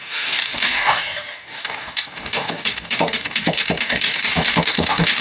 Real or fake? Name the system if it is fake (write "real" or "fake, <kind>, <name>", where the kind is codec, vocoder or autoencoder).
fake, codec, DAC